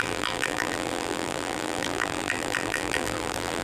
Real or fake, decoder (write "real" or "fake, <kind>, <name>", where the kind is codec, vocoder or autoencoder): fake, vocoder, BigVGAN v2